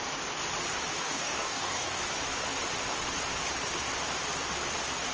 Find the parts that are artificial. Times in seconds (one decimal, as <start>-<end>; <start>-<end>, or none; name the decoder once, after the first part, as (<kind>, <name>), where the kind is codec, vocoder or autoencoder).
1.0-2.0 (codec, DAC)